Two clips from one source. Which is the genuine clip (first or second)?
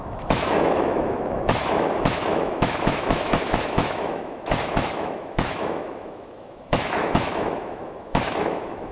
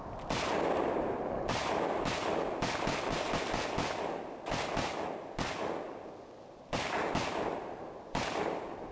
second